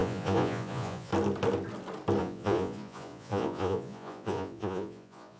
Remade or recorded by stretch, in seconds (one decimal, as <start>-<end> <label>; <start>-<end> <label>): 0.0-1.1 remade; 1.1-2.2 recorded; 2.2-5.4 remade